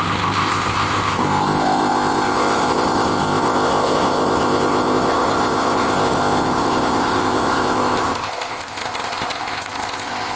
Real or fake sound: fake